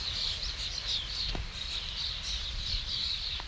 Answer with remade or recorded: recorded